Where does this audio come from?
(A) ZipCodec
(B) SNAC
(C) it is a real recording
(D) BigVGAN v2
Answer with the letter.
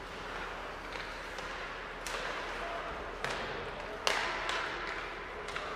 C